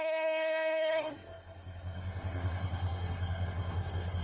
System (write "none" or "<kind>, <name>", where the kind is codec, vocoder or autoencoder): codec, SNAC